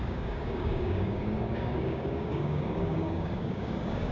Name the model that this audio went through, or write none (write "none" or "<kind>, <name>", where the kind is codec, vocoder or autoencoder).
codec, DAC